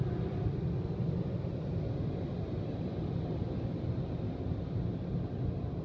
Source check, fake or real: real